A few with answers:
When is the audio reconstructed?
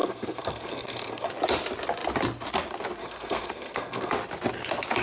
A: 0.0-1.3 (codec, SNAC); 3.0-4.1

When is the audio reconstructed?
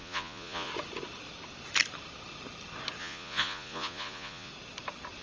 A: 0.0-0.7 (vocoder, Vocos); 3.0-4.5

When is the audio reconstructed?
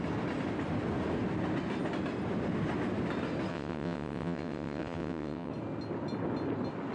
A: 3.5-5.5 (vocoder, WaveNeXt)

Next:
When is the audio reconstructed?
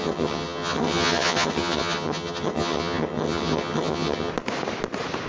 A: 0.0-4.3 (vocoder, HiFi-GAN)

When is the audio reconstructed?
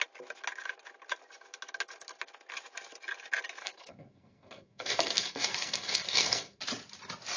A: 3.6-6.6 (codec, SNAC)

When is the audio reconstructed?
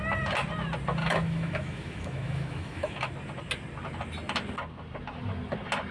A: 1.0-3.1 (autoencoder, DAC-VAE)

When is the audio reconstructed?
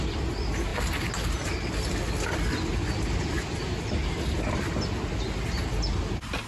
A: none